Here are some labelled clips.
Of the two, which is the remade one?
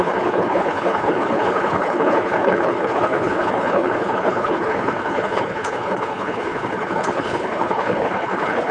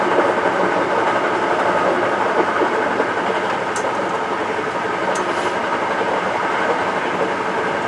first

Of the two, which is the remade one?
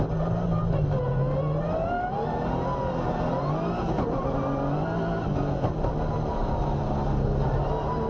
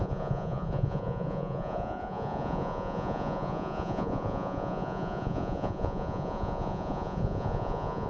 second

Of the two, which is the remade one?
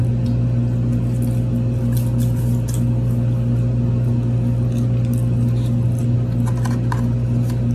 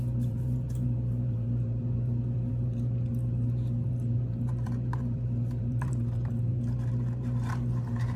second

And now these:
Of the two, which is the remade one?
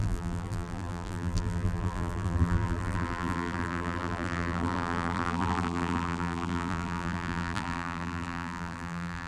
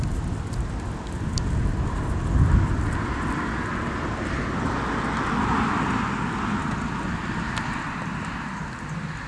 first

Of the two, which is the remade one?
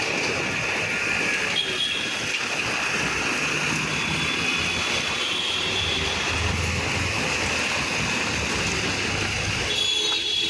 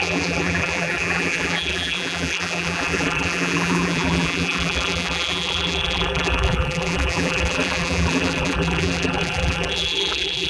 second